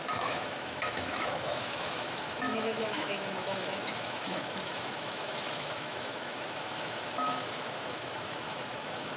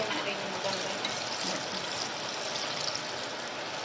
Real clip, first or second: second